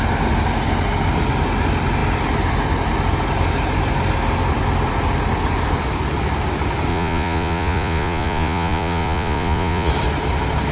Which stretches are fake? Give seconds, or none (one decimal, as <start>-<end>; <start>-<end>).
6.9-9.9